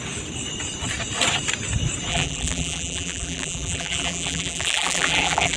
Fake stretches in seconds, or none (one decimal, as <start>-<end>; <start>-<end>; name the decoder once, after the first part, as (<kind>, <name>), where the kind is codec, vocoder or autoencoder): 2.1-5.6 (vocoder, BigVGAN v2)